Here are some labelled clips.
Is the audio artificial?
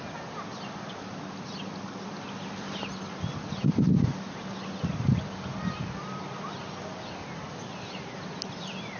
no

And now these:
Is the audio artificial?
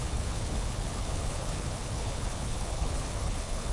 yes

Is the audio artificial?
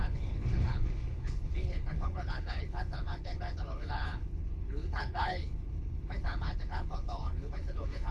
yes